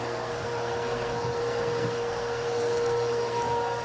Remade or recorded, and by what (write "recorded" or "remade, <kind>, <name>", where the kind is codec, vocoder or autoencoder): remade, codec, SNAC